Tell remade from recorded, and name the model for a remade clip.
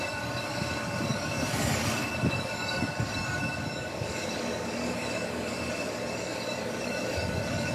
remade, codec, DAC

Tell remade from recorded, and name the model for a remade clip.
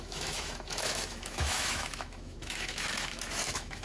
remade, autoencoder, DAC-VAE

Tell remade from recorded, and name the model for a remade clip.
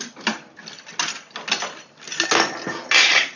recorded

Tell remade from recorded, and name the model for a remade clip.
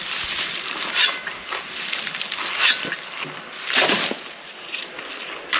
remade, vocoder, BigVGAN v2